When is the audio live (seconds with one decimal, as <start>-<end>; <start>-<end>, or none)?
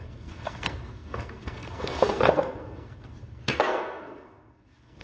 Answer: none